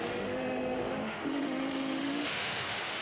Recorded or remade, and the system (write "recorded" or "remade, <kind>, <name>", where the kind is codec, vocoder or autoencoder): remade, autoencoder, DAC-VAE